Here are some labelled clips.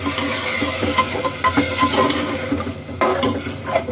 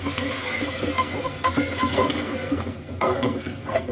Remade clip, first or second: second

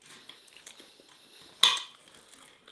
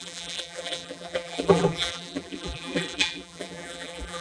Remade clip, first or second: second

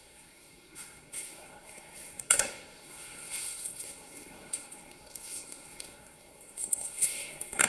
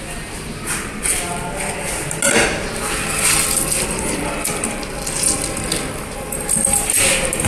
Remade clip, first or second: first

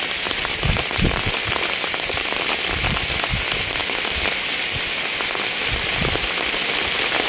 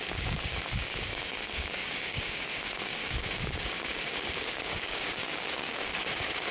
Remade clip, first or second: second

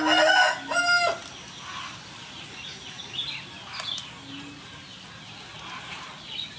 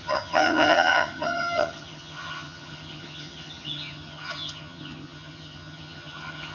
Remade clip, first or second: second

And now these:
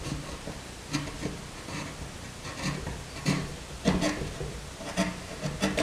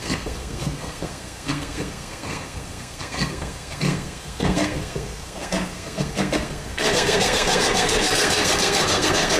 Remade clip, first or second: second